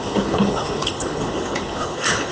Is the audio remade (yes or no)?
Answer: yes